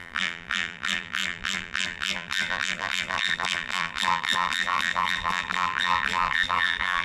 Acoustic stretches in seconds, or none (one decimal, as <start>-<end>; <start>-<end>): none